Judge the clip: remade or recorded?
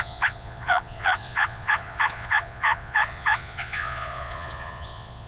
remade